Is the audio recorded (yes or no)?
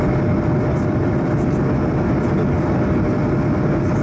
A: yes